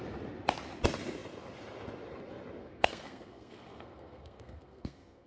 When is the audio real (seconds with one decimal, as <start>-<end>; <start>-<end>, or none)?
0.0-2.6